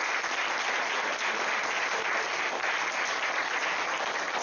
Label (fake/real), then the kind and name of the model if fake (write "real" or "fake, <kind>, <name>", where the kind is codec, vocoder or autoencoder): real